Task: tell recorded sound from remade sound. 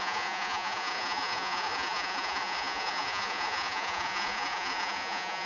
remade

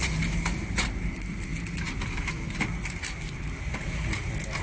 recorded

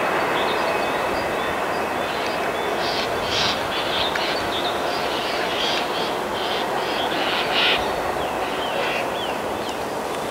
recorded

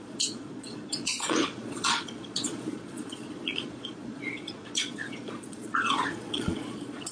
remade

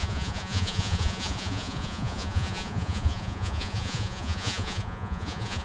remade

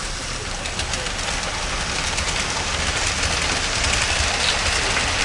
recorded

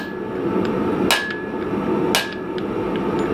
recorded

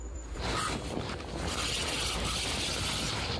recorded